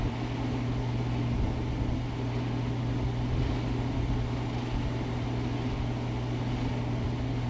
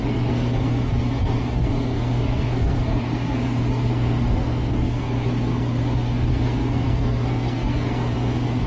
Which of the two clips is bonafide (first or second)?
first